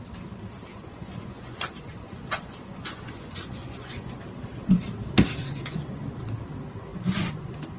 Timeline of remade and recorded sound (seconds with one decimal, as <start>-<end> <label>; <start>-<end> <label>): 0.0-0.7 recorded; 0.7-4.2 remade; 4.2-5.4 recorded; 5.4-6.0 remade; 6.0-6.9 recorded; 6.9-7.8 remade